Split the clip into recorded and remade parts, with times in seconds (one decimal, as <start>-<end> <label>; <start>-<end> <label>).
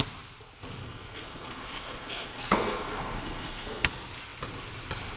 0.0-0.8 recorded; 0.8-3.9 remade; 3.9-5.2 recorded